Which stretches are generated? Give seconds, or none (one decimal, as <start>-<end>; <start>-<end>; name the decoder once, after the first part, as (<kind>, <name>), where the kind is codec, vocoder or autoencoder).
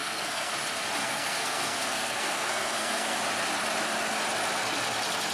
0.0-0.5 (codec, SNAC); 1.0-3.2